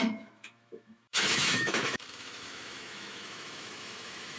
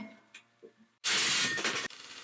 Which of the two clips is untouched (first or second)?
second